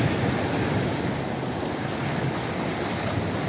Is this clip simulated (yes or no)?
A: no